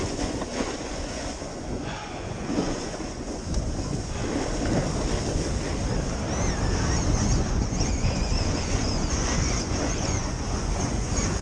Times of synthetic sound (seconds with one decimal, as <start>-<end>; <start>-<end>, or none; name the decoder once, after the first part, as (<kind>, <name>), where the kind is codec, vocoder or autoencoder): 0.0-4.2 (vocoder, Vocos); 7.0-11.4